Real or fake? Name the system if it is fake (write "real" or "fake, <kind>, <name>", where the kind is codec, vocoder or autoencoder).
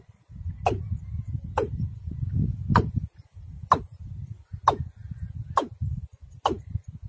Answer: real